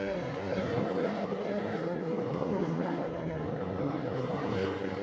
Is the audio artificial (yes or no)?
yes